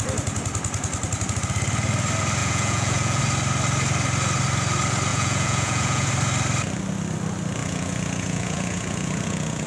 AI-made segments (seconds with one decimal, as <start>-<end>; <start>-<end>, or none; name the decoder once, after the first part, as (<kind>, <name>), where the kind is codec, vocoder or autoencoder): 2.4-3.2 (vocoder, Vocos); 5.1-6.1; 7.6-9.7